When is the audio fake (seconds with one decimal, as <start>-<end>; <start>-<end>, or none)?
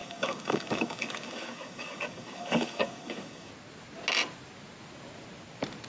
0.0-3.5